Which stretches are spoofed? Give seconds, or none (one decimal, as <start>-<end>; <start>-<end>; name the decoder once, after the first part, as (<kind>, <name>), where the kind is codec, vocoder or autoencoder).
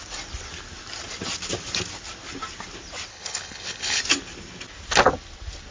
3.1-4.0 (codec, HILCodec)